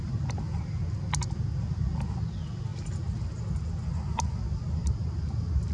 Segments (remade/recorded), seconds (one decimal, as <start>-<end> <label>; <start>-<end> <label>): 0.0-5.7 recorded